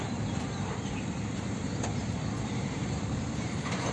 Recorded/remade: remade